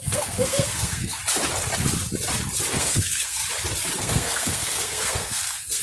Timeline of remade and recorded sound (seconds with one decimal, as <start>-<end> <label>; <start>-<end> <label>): 0.0-1.2 remade; 1.2-2.8 recorded; 2.8-3.4 remade; 3.4-4.0 recorded; 4.0-5.8 remade